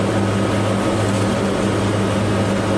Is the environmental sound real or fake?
real